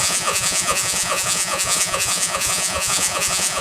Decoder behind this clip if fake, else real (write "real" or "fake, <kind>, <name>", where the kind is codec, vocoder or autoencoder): fake, vocoder, Vocos